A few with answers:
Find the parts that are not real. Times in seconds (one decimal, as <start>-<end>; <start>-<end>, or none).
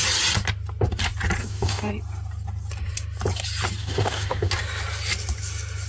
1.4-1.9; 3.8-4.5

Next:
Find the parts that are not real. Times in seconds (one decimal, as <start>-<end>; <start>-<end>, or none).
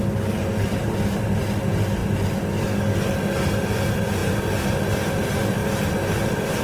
none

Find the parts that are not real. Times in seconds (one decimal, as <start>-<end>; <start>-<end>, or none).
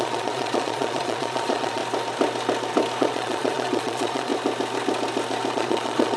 0.0-1.8; 3.0-4.3; 5.5-6.2